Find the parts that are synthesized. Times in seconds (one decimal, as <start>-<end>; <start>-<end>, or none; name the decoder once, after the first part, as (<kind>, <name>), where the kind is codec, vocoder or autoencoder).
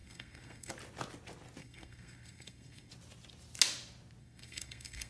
0.0-0.7 (codec, SNAC); 1.6-2.9; 4.2-5.1